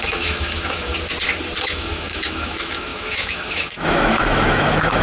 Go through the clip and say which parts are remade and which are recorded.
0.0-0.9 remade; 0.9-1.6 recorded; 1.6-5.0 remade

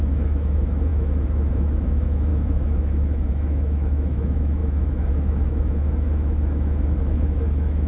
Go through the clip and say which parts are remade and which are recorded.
0.0-7.9 remade

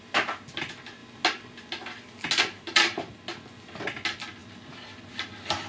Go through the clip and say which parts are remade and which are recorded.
0.0-5.7 recorded

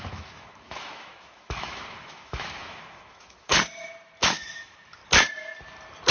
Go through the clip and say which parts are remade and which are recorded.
0.0-3.5 remade; 3.5-4.2 recorded; 4.2-5.0 remade; 5.0-6.1 recorded

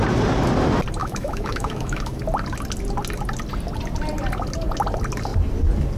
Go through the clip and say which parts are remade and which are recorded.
0.0-1.0 recorded; 1.0-2.2 remade; 2.2-6.0 recorded

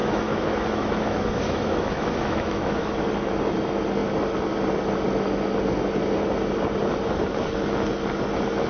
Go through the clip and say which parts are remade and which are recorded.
0.0-2.9 remade; 2.9-8.7 recorded

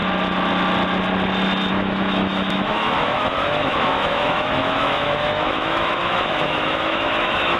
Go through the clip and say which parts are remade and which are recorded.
0.0-1.7 recorded; 1.7-7.6 remade

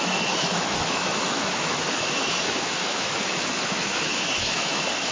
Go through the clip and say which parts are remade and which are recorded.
0.0-5.1 remade